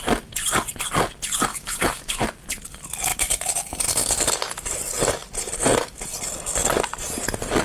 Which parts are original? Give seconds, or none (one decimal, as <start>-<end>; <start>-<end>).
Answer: 0.0-1.5; 2.2-7.6